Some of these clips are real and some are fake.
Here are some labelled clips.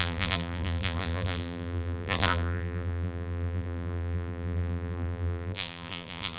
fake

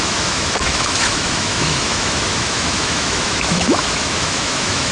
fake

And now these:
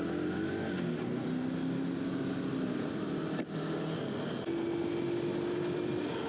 real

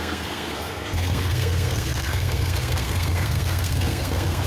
fake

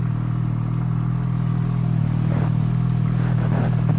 real